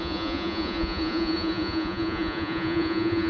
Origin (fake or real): fake